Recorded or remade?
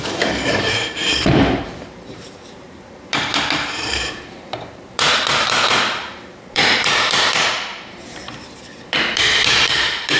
remade